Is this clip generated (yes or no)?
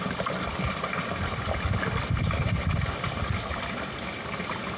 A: no